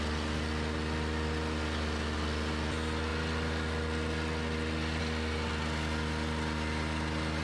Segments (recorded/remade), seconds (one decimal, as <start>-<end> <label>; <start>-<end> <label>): 0.0-7.4 recorded